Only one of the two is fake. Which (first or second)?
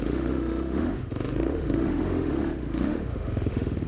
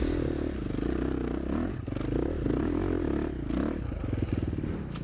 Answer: first